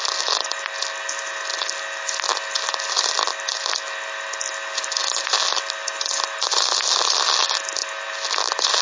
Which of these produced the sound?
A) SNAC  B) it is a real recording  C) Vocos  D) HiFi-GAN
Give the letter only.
B